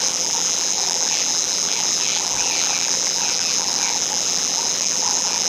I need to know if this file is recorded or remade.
remade